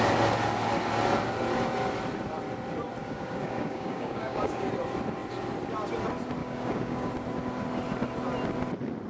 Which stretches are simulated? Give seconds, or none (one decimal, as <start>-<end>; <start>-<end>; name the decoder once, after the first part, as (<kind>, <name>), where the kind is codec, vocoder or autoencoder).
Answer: 3.0-4.7 (codec, DAC); 6.4-7.1